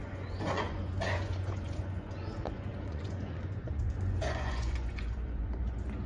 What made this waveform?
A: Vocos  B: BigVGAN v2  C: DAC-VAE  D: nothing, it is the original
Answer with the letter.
A